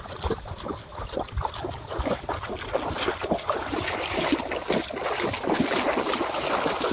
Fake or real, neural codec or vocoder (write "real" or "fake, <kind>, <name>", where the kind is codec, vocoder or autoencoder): real